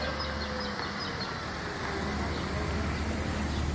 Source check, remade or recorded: recorded